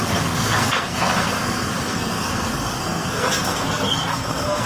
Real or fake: fake